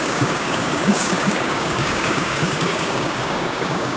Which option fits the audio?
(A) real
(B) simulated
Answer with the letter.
B